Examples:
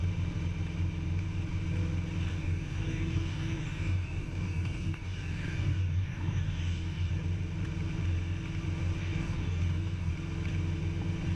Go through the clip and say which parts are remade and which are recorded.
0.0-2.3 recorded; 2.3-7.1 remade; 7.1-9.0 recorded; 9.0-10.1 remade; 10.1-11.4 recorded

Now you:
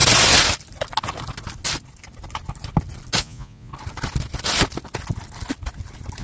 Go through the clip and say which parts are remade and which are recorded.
0.0-3.2 recorded; 3.2-3.7 remade; 3.7-6.2 recorded